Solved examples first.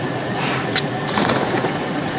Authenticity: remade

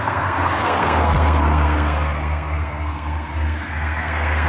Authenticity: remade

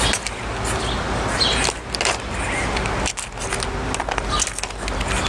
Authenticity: recorded